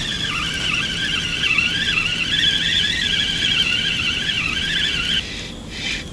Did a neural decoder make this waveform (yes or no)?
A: no